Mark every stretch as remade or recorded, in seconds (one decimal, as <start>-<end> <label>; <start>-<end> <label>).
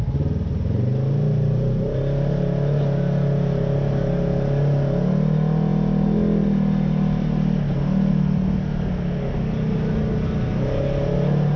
0.0-11.6 recorded